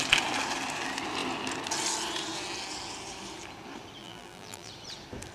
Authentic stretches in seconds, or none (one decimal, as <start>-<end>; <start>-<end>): 0.0-4.0; 4.7-5.3